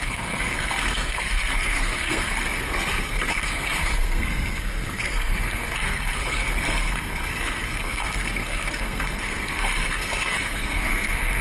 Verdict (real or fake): fake